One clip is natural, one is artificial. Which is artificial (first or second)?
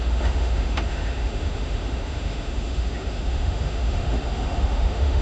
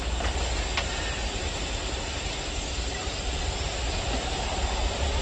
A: first